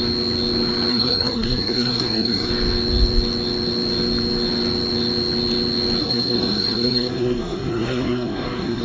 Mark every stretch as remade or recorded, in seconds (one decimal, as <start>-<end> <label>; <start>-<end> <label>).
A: 0.0-0.9 recorded; 0.9-2.5 remade; 2.5-6.0 recorded; 6.0-8.8 remade